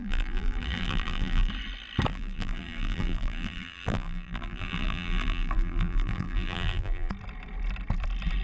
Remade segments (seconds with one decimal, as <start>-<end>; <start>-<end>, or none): 0.0-1.5; 2.1-7.1